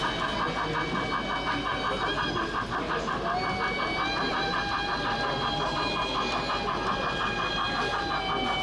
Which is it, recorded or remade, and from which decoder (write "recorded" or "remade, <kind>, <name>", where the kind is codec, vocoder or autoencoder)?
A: recorded